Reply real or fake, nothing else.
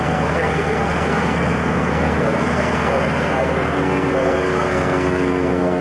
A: fake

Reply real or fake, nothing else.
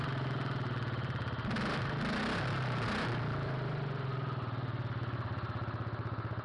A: real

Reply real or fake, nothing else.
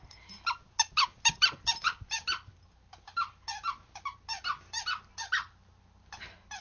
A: real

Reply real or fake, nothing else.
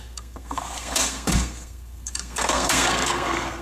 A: fake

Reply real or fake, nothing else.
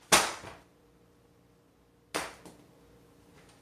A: real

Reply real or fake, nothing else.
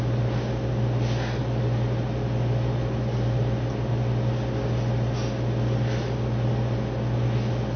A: real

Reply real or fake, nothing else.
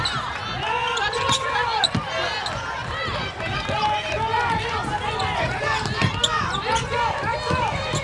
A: real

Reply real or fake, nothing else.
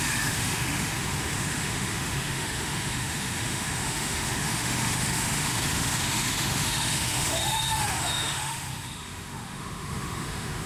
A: fake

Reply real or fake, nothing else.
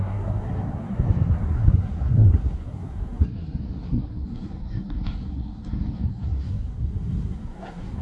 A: fake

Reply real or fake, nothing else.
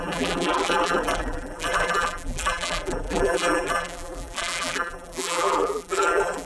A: fake